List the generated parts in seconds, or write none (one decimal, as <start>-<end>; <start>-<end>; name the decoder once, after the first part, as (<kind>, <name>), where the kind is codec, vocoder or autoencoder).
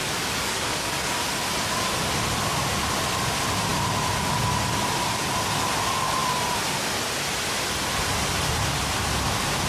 0.0-1.2 (codec, DAC)